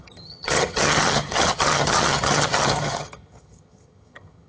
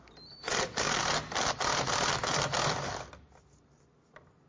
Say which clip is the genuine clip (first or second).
second